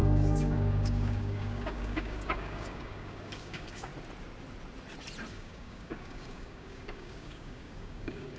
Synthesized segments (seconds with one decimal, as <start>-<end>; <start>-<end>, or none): 0.0-3.9; 5.3-8.4